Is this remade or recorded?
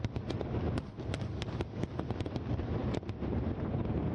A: recorded